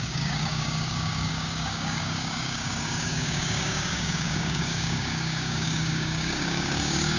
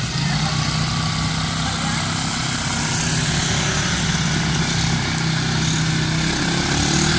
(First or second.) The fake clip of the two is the first